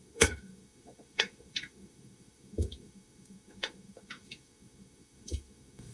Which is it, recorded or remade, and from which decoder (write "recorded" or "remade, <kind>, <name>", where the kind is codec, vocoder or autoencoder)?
remade, autoencoder, DAC-VAE